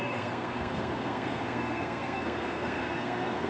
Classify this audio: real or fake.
fake